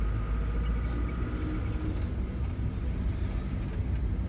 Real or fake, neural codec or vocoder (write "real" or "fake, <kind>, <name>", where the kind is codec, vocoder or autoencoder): real